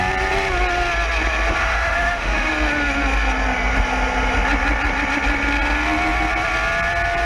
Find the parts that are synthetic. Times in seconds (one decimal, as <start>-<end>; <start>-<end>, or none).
1.6-2.5